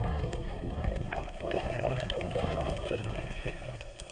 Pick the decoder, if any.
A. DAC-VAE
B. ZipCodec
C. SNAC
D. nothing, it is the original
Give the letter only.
C